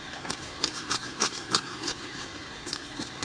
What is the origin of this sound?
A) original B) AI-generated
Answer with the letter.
B